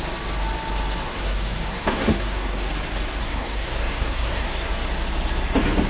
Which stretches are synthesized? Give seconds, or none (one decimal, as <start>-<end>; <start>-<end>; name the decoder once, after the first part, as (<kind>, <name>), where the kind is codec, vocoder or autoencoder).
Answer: 1.0-2.7 (codec, SNAC); 3.2-4.7